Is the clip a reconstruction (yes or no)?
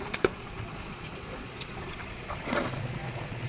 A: yes